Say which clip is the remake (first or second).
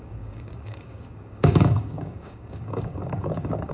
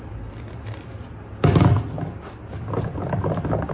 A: first